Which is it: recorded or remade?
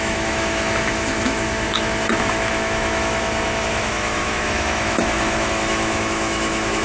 remade